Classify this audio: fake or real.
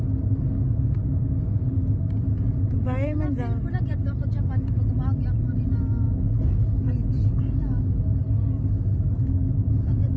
real